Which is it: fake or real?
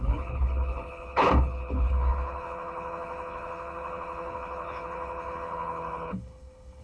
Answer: fake